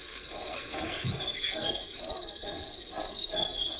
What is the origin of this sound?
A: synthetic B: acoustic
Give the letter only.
A